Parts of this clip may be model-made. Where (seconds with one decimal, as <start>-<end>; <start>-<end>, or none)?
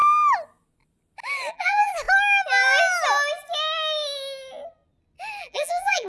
1.5-1.9; 5.4-6.1